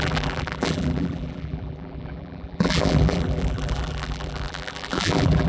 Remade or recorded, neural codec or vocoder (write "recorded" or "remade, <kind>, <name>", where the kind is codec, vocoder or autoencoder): remade, vocoder, BigVGAN v2